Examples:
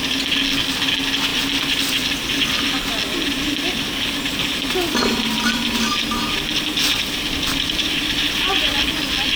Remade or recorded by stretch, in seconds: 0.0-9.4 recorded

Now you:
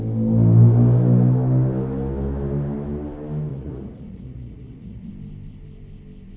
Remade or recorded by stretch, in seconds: 0.0-3.5 recorded; 3.5-5.1 remade; 5.1-6.4 recorded

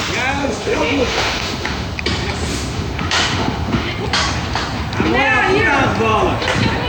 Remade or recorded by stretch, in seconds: 0.0-0.4 recorded; 0.4-1.9 remade; 1.9-2.5 recorded; 2.5-3.9 remade; 3.9-6.9 recorded

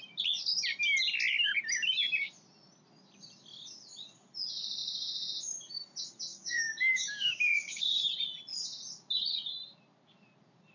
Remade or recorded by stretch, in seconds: 0.0-6.3 recorded; 6.3-8.0 remade; 8.0-10.7 recorded

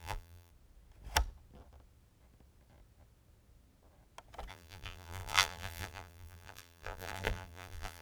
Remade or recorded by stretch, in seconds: 0.0-0.5 remade; 0.5-4.5 recorded; 4.5-8.0 remade

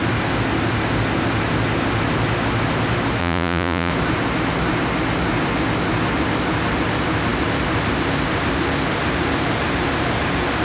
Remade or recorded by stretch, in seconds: 0.0-3.2 recorded; 3.2-3.9 remade; 3.9-10.6 recorded

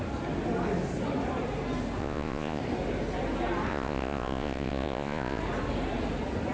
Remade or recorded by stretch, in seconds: 0.0-2.0 recorded; 2.0-2.6 remade; 2.6-3.7 recorded; 3.7-5.4 remade; 5.4-6.5 recorded

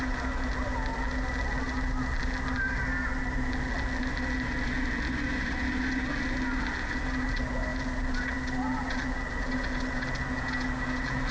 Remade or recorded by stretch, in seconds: 0.0-11.3 recorded